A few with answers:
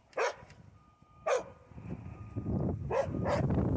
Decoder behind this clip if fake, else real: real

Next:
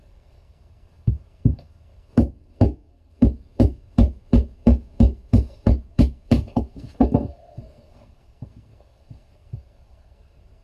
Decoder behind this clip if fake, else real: fake, codec, SNAC